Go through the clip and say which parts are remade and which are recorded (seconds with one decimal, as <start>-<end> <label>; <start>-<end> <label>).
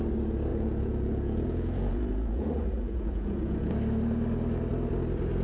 0.0-0.5 recorded; 0.5-3.7 remade; 3.7-5.4 recorded